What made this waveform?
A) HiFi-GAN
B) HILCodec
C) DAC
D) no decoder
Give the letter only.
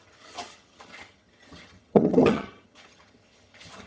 A